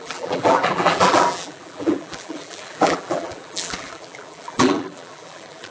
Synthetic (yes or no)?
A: yes